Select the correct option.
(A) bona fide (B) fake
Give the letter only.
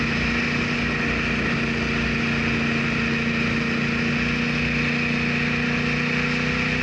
A